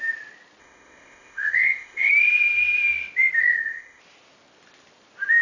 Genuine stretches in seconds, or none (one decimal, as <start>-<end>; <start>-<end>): 0.0-0.6; 2.1-3.4; 4.0-5.4